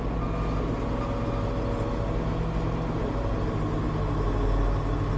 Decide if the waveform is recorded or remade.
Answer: recorded